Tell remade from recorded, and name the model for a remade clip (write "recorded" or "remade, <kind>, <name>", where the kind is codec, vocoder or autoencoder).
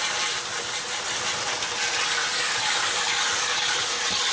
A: recorded